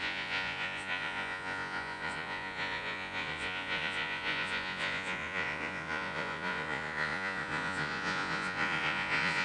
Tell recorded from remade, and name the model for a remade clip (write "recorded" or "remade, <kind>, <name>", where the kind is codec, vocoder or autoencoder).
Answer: remade, vocoder, Vocos